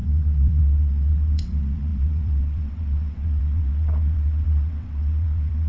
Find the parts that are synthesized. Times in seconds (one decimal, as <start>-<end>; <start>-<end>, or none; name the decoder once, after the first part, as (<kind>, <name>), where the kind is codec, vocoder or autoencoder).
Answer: 0.0-5.7 (vocoder, WaveNeXt)